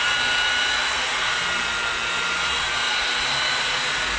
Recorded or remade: recorded